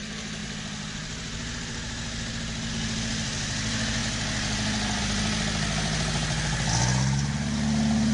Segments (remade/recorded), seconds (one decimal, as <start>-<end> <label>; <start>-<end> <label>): 0.0-8.1 recorded

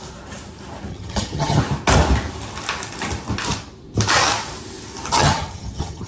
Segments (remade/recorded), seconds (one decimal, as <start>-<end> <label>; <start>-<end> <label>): 0.0-0.9 recorded; 0.9-1.6 remade; 1.6-5.1 recorded; 5.1-6.1 remade

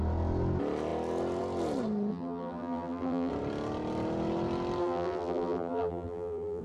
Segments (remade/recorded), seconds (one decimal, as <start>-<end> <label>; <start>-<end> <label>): 0.0-2.1 recorded; 2.1-3.3 remade; 3.3-4.8 recorded; 4.8-6.6 remade

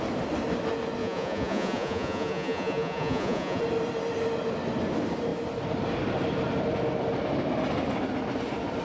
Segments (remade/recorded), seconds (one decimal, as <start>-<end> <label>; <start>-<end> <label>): 0.0-1.0 recorded; 1.0-3.6 remade; 3.6-8.8 recorded